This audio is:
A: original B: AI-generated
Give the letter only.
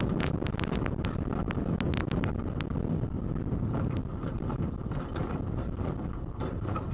A